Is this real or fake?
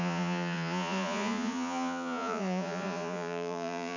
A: fake